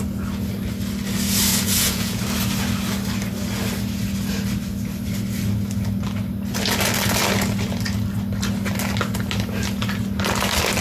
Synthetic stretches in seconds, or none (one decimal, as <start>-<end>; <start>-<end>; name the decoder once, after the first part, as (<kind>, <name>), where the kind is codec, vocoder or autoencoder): 1.5-2.2 (vocoder, Vocos)